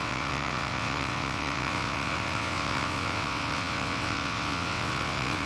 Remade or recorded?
remade